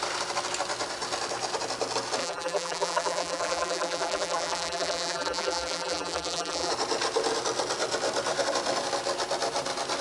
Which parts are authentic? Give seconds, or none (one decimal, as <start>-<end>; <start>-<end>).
0.0-2.2; 6.7-10.0